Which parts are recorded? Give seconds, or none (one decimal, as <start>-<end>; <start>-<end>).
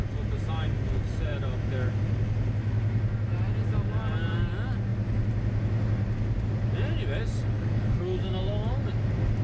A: 0.0-7.4; 8.4-9.4